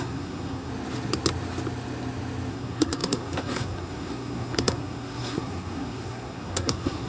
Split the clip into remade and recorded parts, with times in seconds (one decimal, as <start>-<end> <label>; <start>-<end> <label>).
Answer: 0.0-0.7 remade; 0.7-2.5 recorded; 2.5-7.1 remade